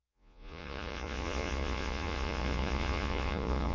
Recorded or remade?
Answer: remade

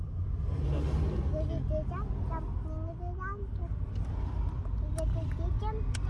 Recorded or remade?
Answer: recorded